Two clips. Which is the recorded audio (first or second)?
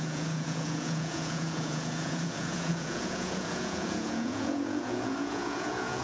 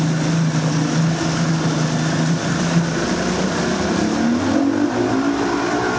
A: second